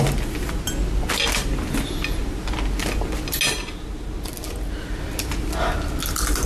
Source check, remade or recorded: recorded